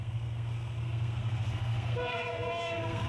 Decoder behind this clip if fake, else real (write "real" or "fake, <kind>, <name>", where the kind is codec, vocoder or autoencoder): fake, codec, SNAC